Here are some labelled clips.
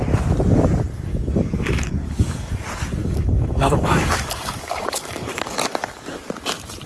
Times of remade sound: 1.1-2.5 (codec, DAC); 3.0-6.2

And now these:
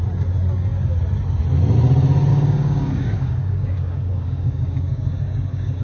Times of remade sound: 2.3-5.8 (codec, DAC)